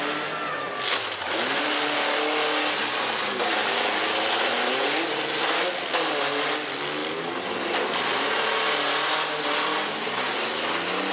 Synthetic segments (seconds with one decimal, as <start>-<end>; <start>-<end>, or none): none